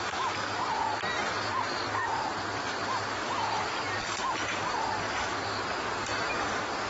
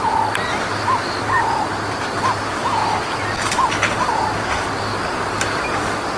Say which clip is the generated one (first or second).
second